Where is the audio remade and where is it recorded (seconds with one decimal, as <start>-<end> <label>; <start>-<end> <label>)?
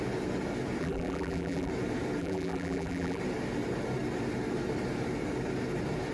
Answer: 0.0-0.8 recorded; 0.8-1.7 remade; 1.7-2.2 recorded; 2.2-3.2 remade; 3.2-6.1 recorded